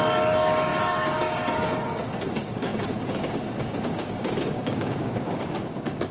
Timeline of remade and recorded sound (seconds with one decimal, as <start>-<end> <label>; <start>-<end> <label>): 0.0-6.1 remade